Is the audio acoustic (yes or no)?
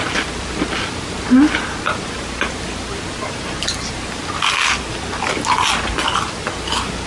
yes